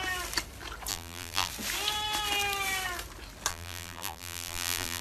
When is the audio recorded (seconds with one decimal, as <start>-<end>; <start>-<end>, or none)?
0.0-0.9; 1.5-3.5